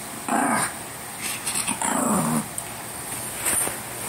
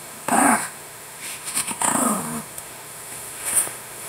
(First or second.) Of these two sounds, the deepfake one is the second